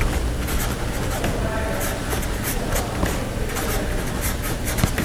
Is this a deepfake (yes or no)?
no